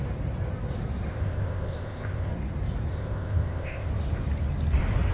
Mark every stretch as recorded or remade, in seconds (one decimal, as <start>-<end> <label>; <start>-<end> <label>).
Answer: 0.0-1.1 recorded; 1.1-2.3 remade; 2.3-2.9 recorded; 2.9-3.9 remade; 3.9-5.1 recorded